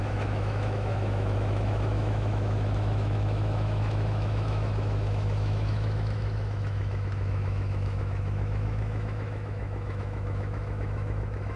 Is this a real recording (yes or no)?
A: no